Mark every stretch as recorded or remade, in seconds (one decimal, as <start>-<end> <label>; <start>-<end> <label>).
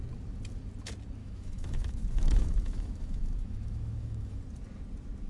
0.0-1.2 recorded; 1.2-4.4 remade; 4.4-5.3 recorded